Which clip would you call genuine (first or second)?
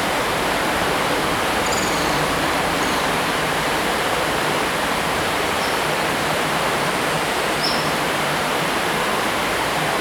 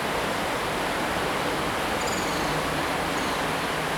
second